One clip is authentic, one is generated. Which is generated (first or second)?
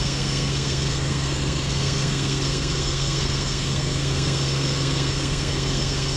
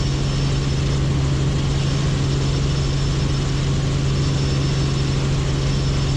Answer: first